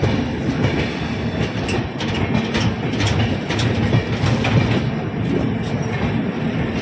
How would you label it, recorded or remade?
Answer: recorded